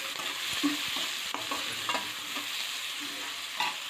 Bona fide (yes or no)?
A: yes